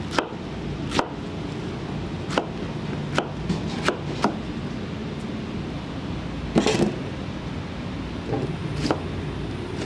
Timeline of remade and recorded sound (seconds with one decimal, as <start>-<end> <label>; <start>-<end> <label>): 0.0-9.9 recorded